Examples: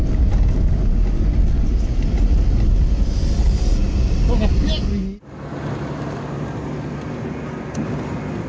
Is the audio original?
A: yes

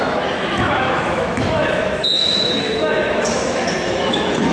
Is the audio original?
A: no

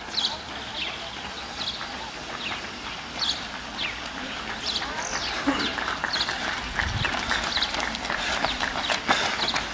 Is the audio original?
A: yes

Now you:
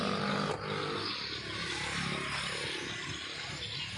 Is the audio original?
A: yes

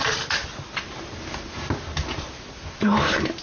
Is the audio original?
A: yes